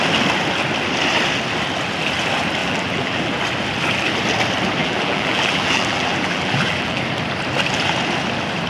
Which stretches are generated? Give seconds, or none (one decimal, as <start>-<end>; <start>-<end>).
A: 2.6-3.3; 4.8-7.0